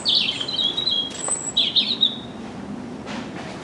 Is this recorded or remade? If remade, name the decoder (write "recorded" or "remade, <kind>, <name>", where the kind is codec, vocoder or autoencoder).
recorded